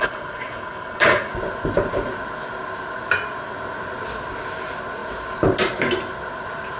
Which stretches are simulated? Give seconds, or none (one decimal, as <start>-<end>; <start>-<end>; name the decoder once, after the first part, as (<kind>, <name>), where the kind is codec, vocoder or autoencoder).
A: 0.0-1.3 (codec, HILCodec)